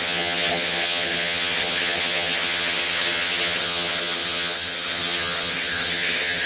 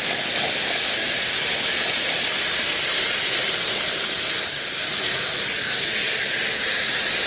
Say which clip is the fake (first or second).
first